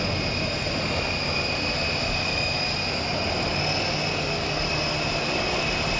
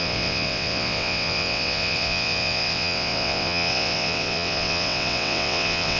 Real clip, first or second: first